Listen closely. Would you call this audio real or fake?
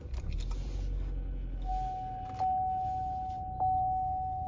real